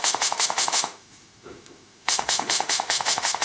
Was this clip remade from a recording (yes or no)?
yes